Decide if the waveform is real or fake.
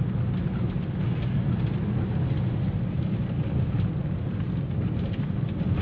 real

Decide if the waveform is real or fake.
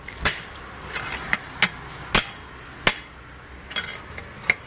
real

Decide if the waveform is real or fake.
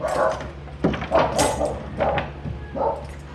real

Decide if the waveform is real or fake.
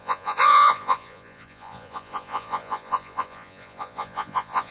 fake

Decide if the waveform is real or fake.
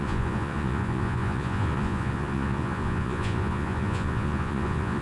fake